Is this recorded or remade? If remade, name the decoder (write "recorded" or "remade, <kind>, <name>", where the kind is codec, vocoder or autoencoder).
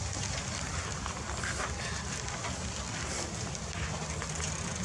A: remade, vocoder, BigVGAN v2